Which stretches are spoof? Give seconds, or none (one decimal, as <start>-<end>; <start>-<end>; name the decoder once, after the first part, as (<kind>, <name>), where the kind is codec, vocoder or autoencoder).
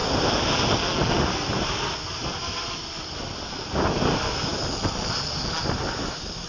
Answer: none